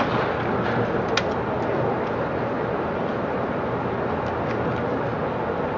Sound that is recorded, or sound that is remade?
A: recorded